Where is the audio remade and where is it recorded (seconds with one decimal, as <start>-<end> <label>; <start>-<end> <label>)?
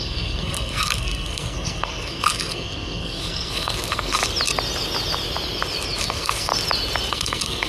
0.0-4.2 remade; 4.2-6.0 recorded; 6.0-6.5 remade; 6.5-7.1 recorded; 7.1-7.7 remade